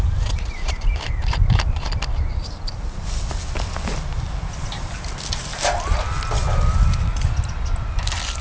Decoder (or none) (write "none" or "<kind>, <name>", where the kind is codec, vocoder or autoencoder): none